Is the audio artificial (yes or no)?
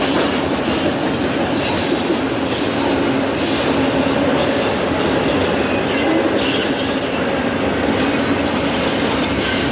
no